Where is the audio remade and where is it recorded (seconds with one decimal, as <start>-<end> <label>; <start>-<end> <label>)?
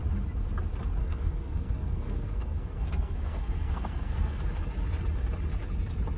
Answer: 0.0-1.0 recorded; 1.0-4.4 remade; 4.4-6.2 recorded